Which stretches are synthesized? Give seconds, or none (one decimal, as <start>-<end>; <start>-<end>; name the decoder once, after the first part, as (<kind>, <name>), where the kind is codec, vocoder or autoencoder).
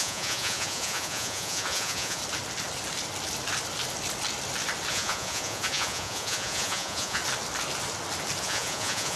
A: 0.0-2.2 (vocoder, Vocos); 4.9-7.2; 8.4-9.2